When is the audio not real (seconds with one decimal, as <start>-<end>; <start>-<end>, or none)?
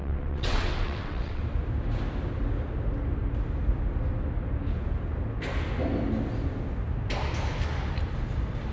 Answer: 0.0-1.4